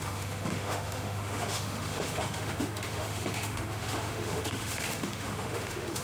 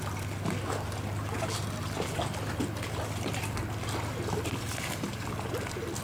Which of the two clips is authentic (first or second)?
second